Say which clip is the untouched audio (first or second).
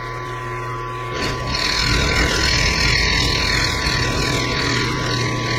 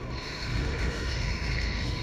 first